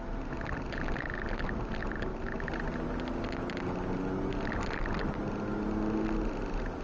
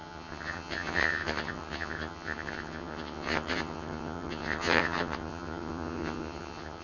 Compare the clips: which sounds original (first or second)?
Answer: first